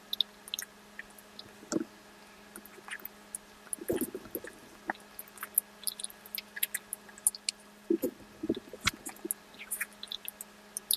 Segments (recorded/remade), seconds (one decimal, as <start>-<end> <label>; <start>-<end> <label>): 0.0-11.0 recorded